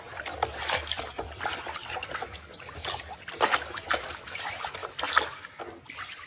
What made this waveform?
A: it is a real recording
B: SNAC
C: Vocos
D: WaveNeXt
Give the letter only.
A